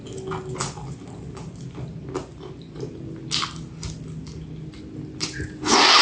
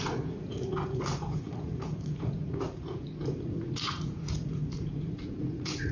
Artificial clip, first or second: second